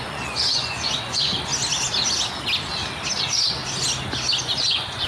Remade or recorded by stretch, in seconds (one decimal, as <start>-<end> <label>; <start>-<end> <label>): 0.0-1.5 remade; 1.5-3.2 recorded; 3.2-3.6 remade; 3.6-4.4 recorded; 4.4-5.1 remade